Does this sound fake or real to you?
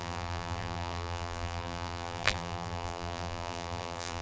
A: fake